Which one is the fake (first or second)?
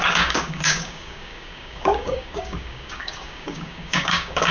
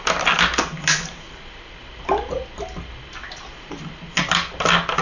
first